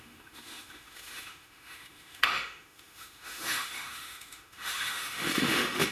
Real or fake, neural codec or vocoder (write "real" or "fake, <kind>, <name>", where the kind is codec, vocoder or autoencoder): fake, autoencoder, DAC-VAE